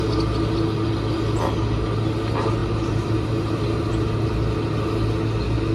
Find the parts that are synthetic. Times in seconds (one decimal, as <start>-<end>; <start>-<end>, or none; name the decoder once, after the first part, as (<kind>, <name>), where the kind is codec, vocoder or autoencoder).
2.6-3.9 (vocoder, BigVGAN v2)